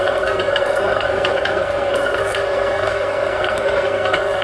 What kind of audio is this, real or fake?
fake